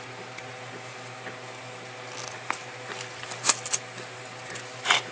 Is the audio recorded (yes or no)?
yes